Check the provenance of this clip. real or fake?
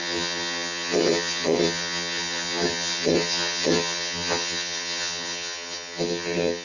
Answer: fake